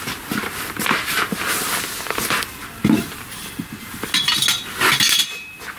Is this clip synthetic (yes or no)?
no